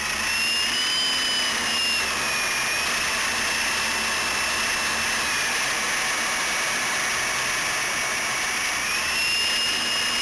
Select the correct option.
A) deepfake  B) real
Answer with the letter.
B